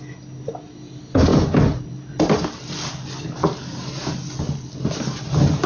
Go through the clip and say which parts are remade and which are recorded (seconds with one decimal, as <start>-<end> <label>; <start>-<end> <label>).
0.0-5.7 recorded